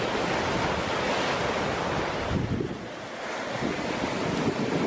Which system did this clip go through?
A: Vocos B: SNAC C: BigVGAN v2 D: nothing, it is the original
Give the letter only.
D